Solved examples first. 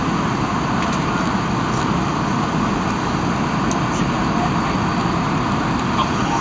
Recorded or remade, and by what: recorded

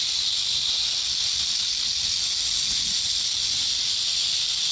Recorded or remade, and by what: recorded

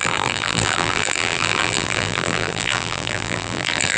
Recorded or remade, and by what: remade, vocoder, BigVGAN v2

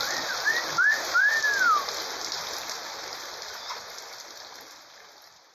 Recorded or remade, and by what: recorded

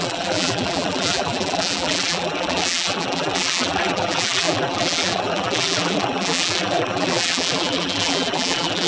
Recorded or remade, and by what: remade, vocoder, BigVGAN v2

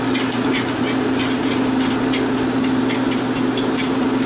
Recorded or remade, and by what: recorded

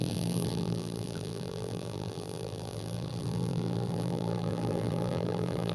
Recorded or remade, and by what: remade, vocoder, BigVGAN v2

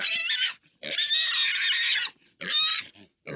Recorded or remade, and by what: recorded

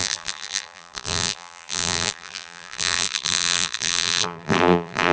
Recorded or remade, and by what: remade, vocoder, BigVGAN v2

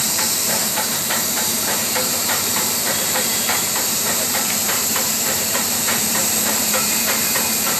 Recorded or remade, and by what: remade, vocoder, BigVGAN v2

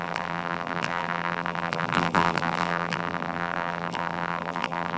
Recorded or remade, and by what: remade, vocoder, BigVGAN v2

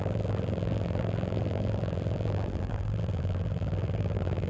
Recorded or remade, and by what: remade, vocoder, BigVGAN v2